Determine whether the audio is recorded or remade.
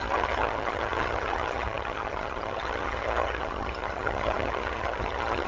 remade